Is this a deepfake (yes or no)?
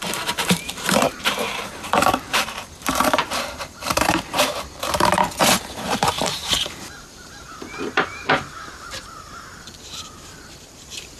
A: yes